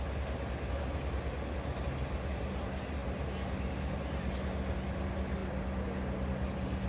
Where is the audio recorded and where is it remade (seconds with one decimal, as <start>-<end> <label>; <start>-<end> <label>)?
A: 0.0-6.9 recorded